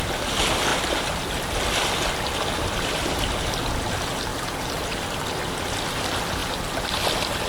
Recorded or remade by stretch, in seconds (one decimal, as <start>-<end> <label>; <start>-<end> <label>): 0.0-4.3 recorded; 4.3-5.9 remade; 5.9-7.5 recorded